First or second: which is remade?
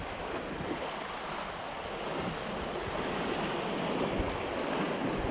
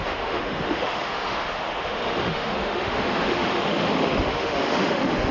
second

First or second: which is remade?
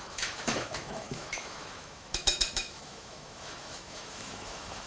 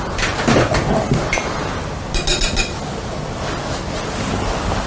first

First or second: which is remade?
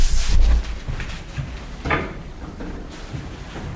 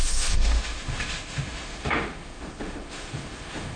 second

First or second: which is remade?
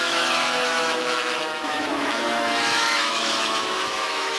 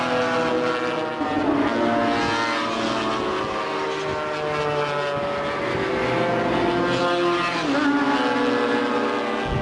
first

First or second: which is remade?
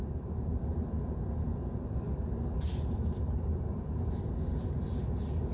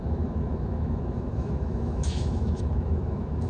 second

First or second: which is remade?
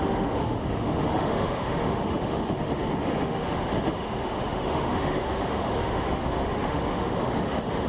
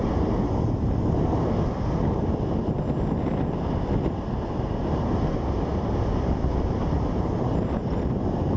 first